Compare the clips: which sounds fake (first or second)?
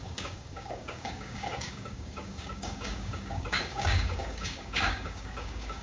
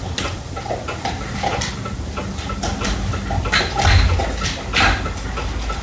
first